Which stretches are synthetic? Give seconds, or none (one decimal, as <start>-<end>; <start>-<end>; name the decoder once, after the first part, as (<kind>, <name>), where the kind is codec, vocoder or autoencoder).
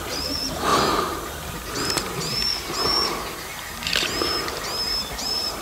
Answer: 0.0-0.7 (vocoder, BigVGAN v2); 1.9-3.5; 5.1-5.6